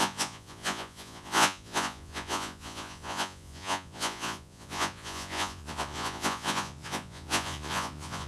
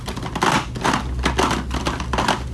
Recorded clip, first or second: second